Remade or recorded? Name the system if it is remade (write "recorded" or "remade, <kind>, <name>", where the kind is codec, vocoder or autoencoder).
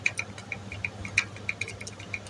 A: recorded